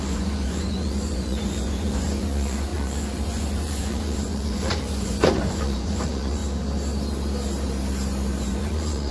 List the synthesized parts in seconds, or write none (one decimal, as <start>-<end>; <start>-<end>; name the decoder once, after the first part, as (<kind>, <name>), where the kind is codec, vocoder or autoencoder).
0.0-6.4 (vocoder, Vocos); 8.4-9.1